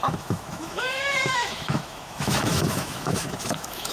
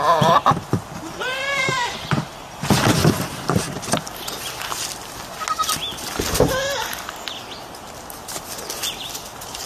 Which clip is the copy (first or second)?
first